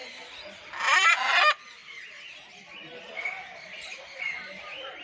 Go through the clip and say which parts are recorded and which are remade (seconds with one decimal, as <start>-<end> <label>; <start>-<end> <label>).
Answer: 0.0-5.0 recorded